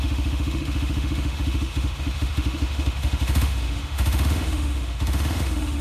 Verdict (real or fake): fake